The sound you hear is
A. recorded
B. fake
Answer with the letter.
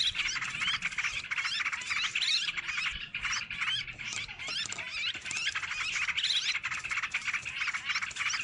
A